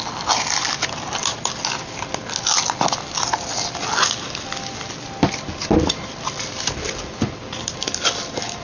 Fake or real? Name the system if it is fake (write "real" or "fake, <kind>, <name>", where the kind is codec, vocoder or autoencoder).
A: real